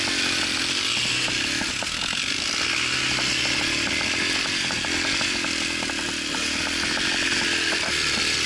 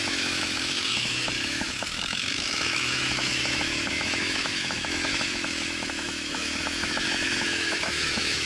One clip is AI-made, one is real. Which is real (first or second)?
first